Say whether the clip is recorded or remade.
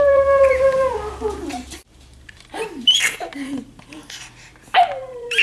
remade